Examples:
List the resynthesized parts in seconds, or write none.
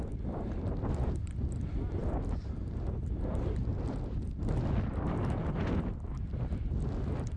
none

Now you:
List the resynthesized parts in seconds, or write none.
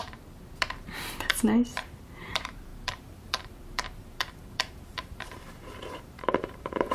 0.8-6.9 (vocoder, BigVGAN v2)